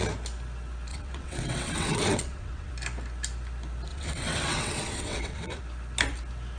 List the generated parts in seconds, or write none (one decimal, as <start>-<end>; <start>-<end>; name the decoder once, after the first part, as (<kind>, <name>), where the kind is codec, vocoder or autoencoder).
0.9-2.7 (vocoder, WaveNeXt); 3.9-5.6